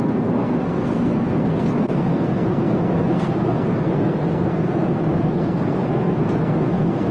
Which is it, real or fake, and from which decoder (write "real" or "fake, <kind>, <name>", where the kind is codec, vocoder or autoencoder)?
fake, codec, SNAC